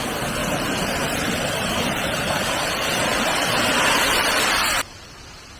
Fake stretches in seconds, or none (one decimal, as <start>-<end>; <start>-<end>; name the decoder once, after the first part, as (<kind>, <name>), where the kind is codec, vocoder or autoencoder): 0.4-3.8 (vocoder, BigVGAN v2)